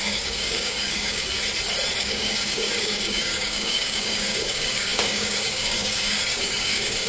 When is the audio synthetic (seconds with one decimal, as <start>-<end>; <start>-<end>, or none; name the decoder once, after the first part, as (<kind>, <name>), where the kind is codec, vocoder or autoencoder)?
0.0-1.4 (codec, DAC); 2.0-7.1